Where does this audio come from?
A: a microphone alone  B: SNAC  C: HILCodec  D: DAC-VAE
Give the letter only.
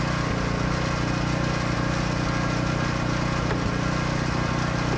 A